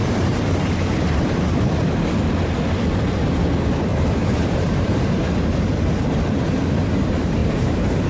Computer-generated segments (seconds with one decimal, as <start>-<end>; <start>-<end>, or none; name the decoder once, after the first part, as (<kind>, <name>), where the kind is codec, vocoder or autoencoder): 0.0-1.7 (vocoder, BigVGAN v2); 3.9-5.1; 7.4-8.1